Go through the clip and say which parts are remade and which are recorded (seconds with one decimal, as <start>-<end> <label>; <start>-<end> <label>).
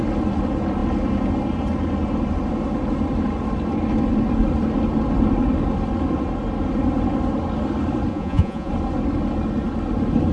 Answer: 0.0-8.1 recorded; 8.1-8.7 remade; 8.7-10.3 recorded